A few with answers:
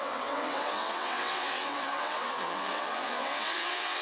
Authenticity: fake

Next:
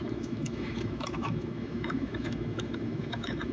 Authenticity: fake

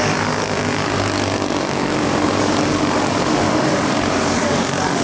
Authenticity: fake